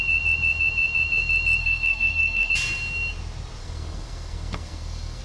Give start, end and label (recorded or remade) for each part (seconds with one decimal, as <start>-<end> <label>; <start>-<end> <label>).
0.0-1.6 recorded; 1.6-2.5 remade; 2.5-3.6 recorded; 3.6-5.2 remade